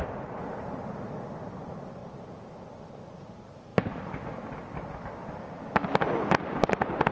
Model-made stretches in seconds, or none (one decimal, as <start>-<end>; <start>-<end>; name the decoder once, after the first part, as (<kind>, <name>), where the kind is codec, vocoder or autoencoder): none